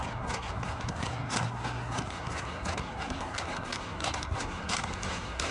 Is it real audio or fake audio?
fake